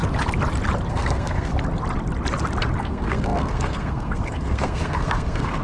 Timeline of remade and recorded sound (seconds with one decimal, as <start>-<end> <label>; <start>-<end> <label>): 0.0-0.9 recorded; 0.9-1.5 remade; 1.5-2.8 recorded; 2.8-5.6 remade